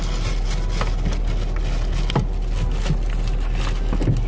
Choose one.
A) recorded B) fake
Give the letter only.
A